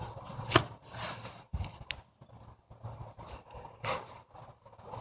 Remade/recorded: recorded